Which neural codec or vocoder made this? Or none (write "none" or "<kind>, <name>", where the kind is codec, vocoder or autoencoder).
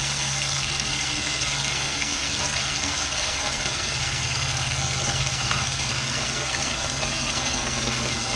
codec, SNAC